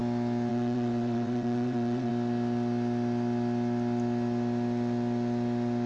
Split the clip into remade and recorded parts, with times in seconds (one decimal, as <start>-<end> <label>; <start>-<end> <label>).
0.0-0.5 recorded; 0.5-2.1 remade; 2.1-5.9 recorded